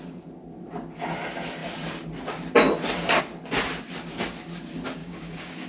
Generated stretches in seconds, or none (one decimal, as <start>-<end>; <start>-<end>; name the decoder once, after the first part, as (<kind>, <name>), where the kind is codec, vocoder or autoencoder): 5.0-5.7 (codec, DAC)